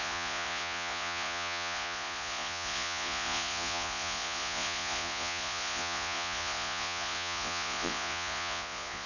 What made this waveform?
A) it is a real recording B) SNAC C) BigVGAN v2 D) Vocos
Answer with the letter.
D